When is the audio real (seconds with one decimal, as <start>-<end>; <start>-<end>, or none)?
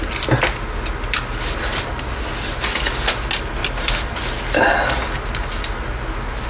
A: 0.0-6.5